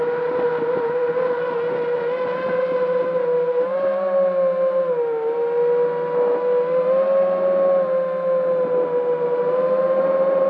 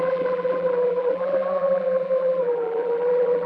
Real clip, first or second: first